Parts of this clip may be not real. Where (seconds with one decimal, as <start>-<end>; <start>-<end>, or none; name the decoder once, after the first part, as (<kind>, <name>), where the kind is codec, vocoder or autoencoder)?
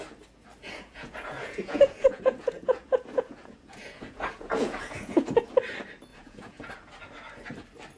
0.6-5.4 (vocoder, Vocos); 6.1-6.7